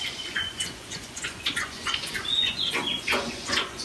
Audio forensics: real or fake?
fake